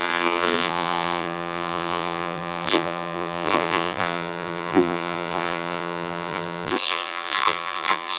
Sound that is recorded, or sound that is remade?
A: remade